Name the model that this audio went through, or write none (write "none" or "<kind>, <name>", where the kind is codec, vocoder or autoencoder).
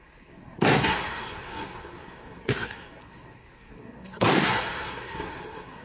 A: codec, SNAC